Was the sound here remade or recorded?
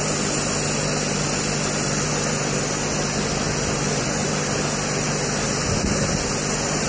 recorded